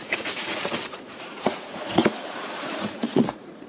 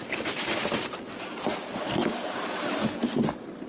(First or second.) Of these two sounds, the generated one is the first